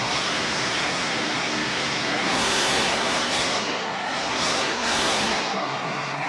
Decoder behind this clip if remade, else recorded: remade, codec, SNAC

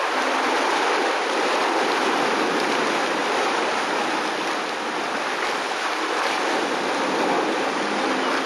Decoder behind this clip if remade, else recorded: recorded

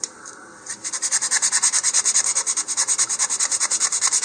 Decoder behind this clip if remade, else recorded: recorded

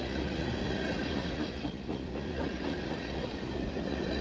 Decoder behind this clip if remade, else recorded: remade, vocoder, Vocos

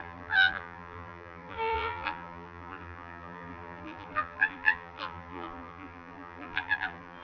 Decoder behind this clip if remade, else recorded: remade, vocoder, BigVGAN v2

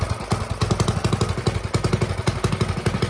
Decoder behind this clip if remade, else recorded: recorded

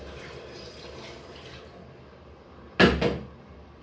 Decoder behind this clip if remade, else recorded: recorded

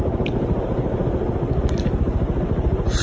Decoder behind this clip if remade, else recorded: recorded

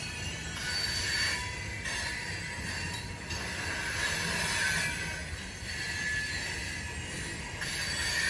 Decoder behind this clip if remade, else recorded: recorded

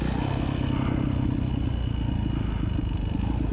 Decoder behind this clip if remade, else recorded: recorded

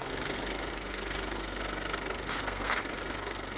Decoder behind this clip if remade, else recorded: remade, codec, SNAC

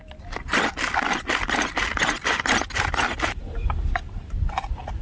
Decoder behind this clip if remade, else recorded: recorded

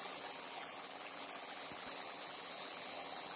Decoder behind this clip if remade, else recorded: remade, vocoder, BigVGAN v2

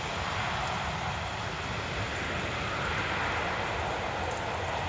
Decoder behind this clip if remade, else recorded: recorded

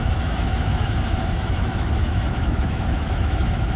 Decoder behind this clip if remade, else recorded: remade, autoencoder, DAC-VAE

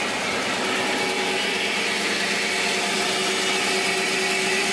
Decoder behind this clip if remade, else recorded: recorded